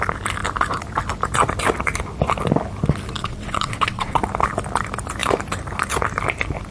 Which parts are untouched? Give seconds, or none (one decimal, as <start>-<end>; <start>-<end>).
0.0-3.2; 4.2-6.7